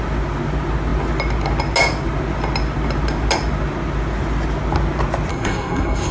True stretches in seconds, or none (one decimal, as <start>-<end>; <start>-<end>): 0.0-5.3